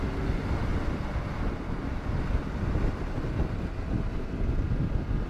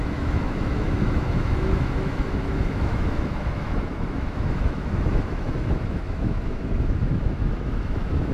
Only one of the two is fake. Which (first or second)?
second